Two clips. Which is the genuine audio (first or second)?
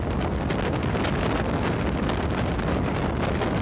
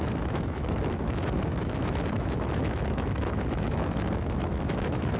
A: first